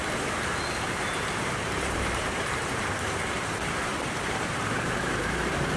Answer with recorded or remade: remade